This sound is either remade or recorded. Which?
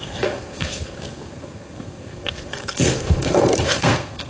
remade